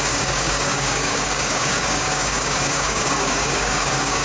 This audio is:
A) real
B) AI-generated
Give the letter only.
B